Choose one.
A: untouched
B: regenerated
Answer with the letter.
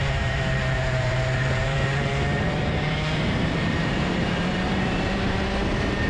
B